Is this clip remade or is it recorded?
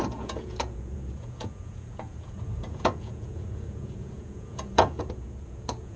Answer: remade